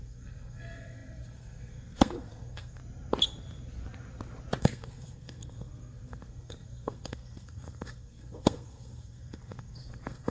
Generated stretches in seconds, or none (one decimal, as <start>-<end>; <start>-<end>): 0.0-2.8; 4.6-10.3